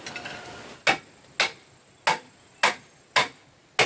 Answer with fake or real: real